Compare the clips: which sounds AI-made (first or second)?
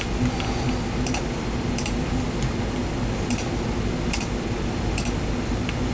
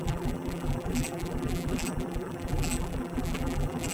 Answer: second